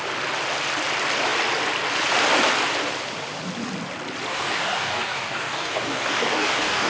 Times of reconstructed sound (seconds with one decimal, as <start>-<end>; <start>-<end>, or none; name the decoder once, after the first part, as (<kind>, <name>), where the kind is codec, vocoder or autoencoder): 4.3-6.9 (codec, DAC)

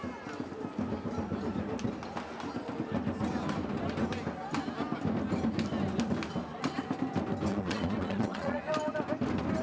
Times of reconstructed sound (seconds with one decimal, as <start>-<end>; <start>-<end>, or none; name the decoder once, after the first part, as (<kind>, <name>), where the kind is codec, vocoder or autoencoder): 7.5-8.6 (vocoder, Vocos)